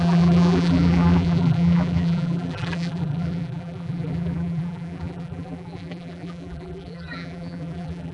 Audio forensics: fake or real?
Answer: fake